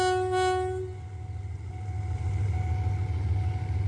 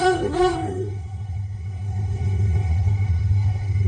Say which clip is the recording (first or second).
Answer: first